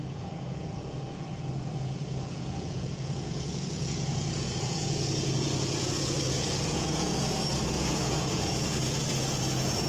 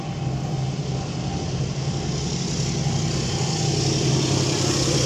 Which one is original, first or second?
second